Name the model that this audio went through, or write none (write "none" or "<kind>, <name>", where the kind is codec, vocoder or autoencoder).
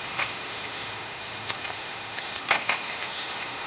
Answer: autoencoder, DAC-VAE